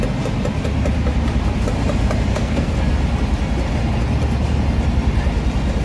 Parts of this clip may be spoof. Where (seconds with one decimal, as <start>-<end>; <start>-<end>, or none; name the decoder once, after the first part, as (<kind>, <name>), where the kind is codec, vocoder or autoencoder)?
2.3-2.9 (codec, SNAC)